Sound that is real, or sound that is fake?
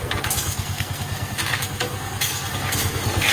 fake